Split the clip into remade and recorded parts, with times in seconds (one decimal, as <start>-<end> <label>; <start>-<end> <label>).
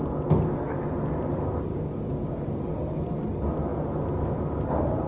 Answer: 0.0-1.7 recorded; 1.7-2.5 remade; 2.5-5.1 recorded